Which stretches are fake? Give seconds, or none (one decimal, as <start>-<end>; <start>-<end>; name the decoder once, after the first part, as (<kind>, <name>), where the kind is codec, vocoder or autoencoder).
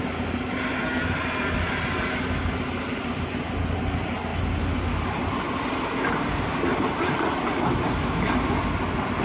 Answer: none